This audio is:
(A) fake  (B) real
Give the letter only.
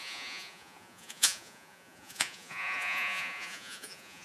A